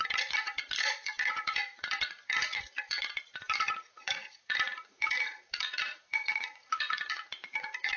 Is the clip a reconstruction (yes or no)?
yes